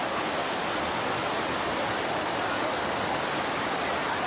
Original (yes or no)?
yes